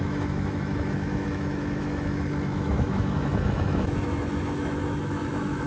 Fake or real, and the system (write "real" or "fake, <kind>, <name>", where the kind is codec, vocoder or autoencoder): fake, autoencoder, DAC-VAE